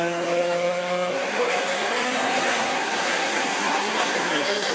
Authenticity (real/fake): fake